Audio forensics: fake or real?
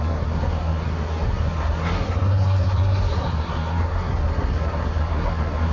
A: fake